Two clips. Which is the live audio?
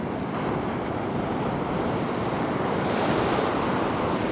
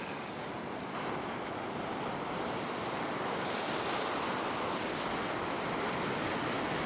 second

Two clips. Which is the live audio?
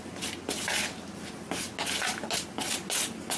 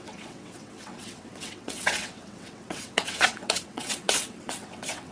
first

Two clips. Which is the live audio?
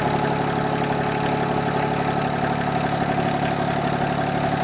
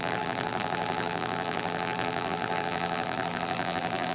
first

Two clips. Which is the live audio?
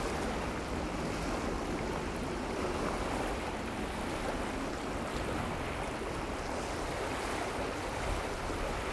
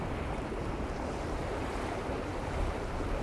first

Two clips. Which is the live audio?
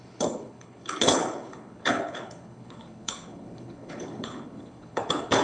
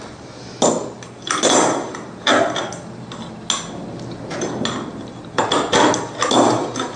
second